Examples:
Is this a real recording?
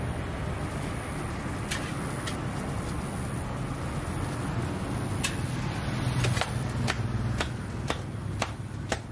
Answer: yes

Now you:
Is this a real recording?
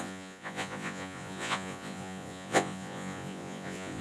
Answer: no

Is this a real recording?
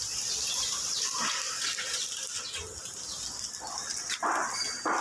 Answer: yes